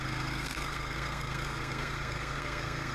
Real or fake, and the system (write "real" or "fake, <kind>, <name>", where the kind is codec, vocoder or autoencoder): fake, codec, SNAC